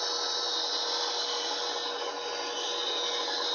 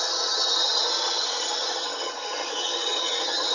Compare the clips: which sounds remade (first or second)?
second